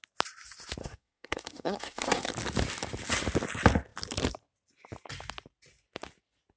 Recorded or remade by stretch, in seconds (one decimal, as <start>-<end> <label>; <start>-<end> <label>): 0.0-0.8 recorded; 0.8-2.3 remade; 2.3-6.6 recorded